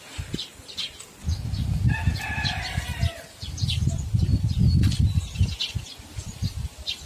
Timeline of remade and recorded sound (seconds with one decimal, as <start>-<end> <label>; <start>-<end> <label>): 0.0-7.1 recorded